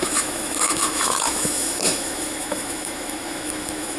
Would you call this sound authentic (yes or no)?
no